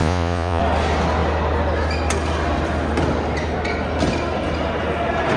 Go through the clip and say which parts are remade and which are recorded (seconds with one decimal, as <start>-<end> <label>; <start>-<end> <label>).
0.0-0.6 remade; 0.6-5.4 recorded